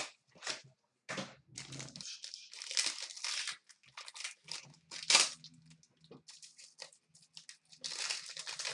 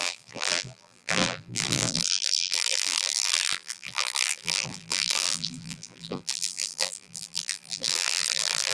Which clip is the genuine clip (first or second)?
first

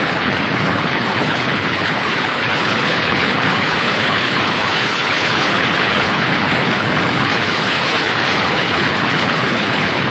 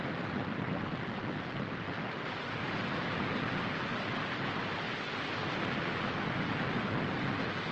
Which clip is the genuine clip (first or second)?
second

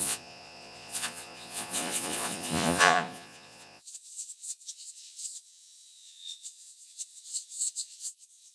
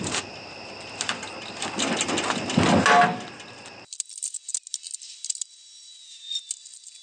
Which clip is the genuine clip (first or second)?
second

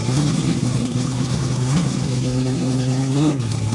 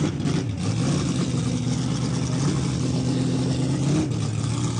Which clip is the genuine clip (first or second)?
second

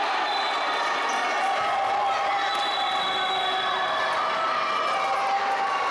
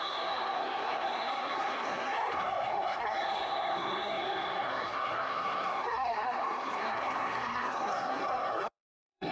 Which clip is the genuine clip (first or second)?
first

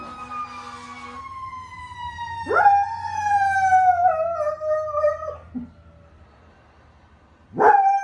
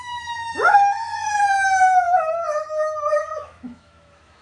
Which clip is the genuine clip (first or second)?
first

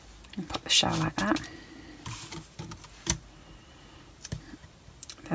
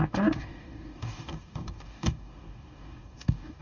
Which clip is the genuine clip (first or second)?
first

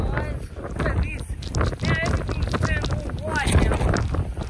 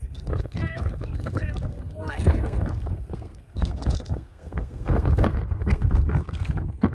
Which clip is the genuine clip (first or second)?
first